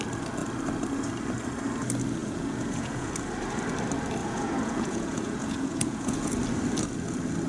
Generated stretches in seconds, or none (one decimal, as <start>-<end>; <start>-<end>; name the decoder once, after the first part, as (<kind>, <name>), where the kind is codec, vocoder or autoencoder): 2.2-3.1 (vocoder, Vocos); 4.2-6.3